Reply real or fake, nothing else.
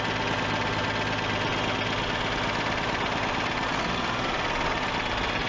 real